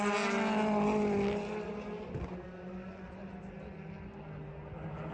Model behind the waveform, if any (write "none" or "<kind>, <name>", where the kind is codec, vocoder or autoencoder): none